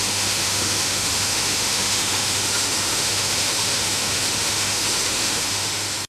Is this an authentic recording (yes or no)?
no